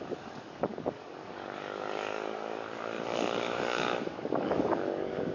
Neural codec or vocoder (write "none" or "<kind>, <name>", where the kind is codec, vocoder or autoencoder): codec, DAC